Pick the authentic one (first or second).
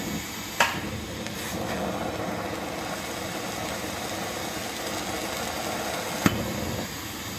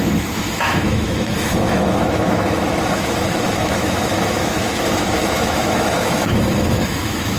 first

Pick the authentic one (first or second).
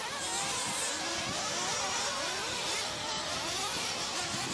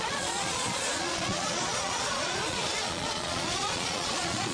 first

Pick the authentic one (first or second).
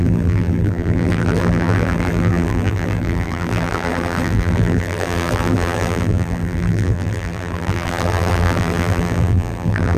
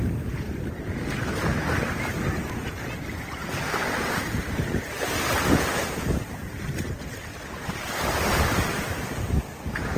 second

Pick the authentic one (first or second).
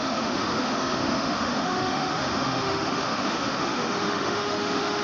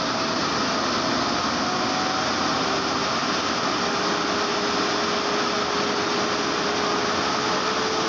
second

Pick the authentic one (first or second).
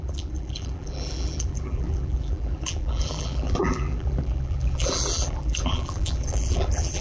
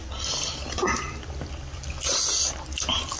second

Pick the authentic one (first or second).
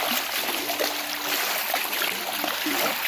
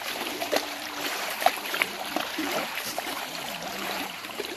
first